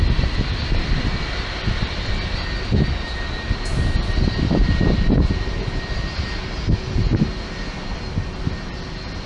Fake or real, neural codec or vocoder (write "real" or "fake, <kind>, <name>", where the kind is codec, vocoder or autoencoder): real